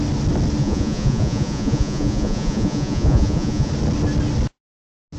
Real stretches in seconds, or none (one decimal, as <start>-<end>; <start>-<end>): 0.0-0.6; 3.7-5.2